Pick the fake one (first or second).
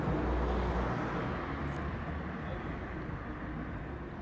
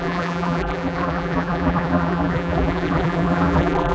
second